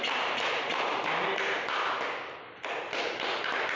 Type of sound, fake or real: real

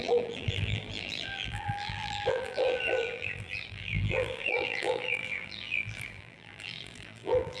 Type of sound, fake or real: fake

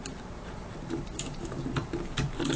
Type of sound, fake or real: fake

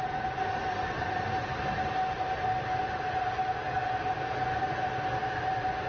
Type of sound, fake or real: real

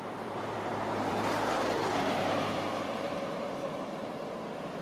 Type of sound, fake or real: fake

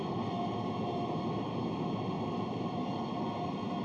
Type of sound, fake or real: real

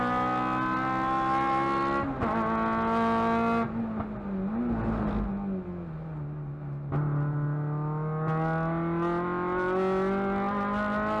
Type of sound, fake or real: real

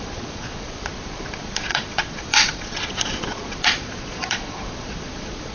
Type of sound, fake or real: fake